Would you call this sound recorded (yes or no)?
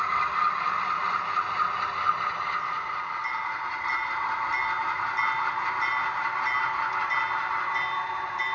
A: yes